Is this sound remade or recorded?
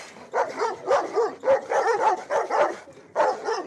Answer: recorded